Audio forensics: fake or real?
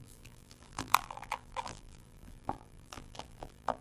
fake